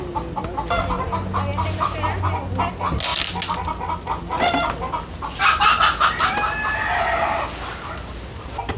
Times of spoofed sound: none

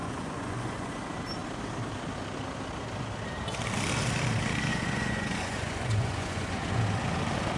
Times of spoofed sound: 0.0-1.0 (vocoder, Vocos); 4.7-6.8